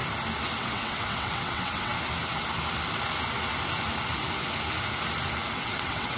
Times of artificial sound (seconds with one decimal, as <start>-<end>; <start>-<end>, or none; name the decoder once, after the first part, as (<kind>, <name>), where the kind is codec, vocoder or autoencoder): 0.6-1.9 (vocoder, WaveNeXt); 5.5-6.2